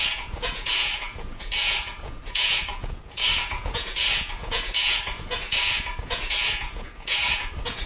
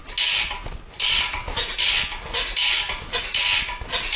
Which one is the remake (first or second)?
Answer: first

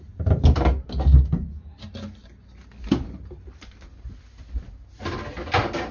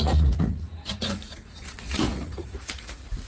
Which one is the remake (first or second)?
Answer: second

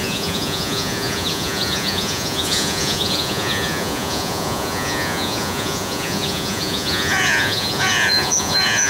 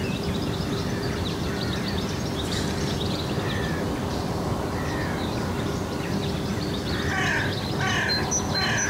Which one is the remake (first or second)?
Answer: first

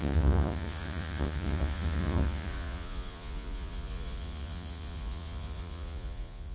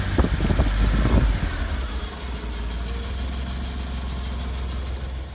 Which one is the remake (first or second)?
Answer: first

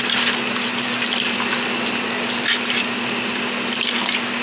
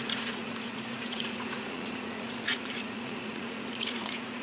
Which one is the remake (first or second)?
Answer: second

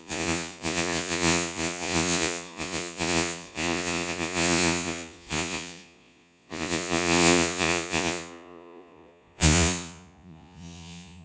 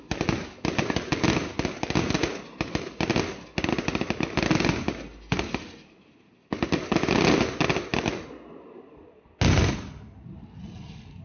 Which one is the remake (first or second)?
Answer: first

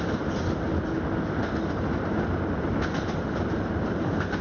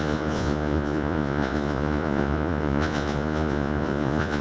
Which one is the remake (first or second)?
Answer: second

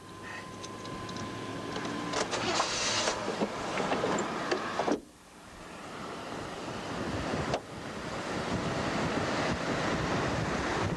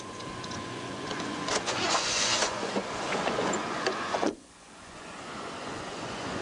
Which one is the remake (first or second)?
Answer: second